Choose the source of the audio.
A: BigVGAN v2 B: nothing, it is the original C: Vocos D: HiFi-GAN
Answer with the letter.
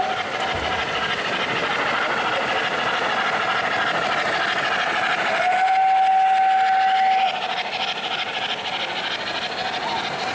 B